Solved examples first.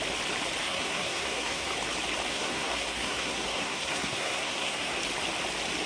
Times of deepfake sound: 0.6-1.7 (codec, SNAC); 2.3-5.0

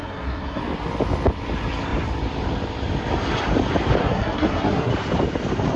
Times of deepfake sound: 0.0-0.6 (codec, SNAC); 4.0-4.9